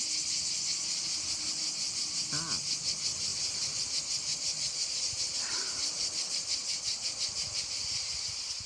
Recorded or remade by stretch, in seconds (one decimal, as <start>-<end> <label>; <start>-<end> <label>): 0.0-8.7 recorded